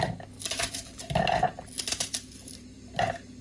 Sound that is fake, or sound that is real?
real